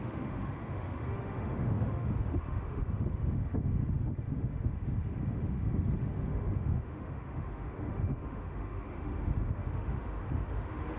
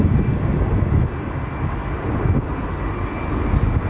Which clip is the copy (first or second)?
first